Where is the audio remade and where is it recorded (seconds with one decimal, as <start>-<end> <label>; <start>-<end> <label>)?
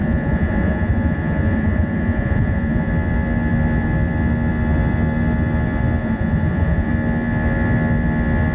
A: 0.0-2.9 remade; 2.9-6.0 recorded; 6.0-6.9 remade; 6.9-8.5 recorded